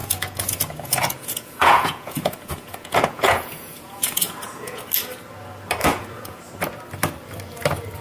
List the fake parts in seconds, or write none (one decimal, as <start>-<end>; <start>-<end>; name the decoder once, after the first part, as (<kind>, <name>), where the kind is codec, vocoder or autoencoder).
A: 0.0-4.8 (vocoder, Vocos); 5.8-6.4